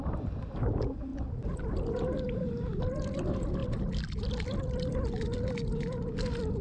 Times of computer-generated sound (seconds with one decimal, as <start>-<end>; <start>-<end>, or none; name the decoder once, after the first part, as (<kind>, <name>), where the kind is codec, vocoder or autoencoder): none

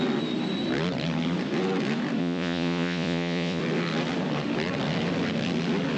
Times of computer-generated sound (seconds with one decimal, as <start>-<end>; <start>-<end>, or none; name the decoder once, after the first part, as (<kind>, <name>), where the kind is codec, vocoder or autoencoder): 2.2-3.6 (vocoder, Vocos)

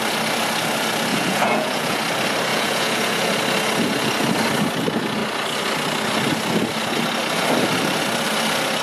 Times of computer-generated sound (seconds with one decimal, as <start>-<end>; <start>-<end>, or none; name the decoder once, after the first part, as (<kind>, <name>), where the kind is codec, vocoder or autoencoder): 1.1-2.0 (vocoder, Vocos); 2.5-3.3

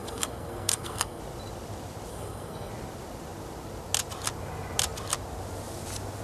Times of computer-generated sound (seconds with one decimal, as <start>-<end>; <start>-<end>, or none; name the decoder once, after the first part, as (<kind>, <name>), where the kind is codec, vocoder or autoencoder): 0.0-1.2 (codec, SNAC); 2.1-2.7